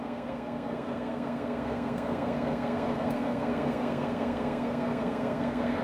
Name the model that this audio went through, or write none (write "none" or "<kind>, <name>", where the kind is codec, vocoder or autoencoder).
codec, SNAC